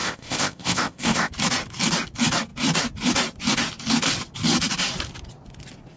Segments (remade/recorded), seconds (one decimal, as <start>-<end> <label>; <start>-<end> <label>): 0.0-1.3 remade; 1.3-6.0 recorded